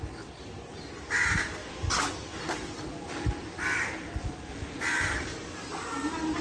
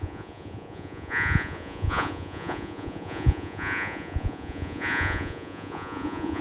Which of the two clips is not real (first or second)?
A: second